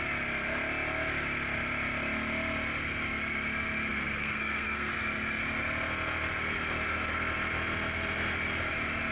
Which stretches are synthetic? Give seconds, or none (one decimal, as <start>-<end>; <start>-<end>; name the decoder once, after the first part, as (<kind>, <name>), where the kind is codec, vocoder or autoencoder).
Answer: 3.9-4.9 (codec, SNAC)